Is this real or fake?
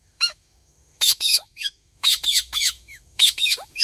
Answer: fake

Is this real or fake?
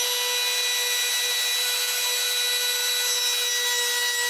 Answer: real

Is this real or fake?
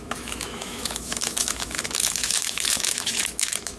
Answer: fake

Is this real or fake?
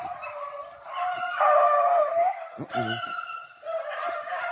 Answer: real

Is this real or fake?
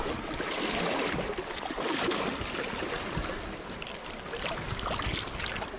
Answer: real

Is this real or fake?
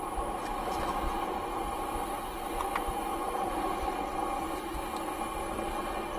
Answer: real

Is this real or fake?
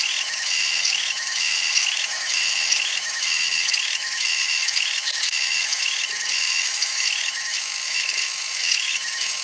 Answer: fake